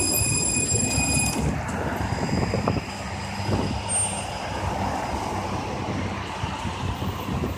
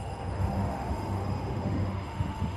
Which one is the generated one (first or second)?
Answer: second